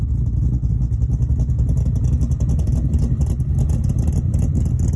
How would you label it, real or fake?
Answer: real